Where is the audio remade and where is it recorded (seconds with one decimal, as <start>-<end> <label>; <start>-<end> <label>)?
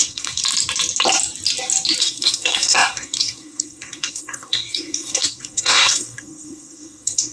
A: 0.0-0.4 remade; 0.4-2.0 recorded; 2.0-7.3 remade